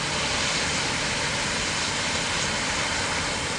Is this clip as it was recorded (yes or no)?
yes